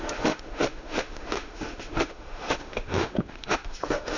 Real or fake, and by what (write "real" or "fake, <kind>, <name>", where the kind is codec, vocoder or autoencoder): fake, autoencoder, DAC-VAE